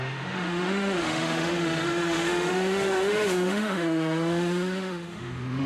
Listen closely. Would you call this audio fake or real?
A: fake